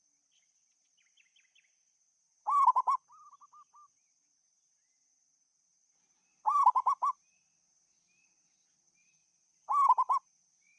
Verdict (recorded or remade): recorded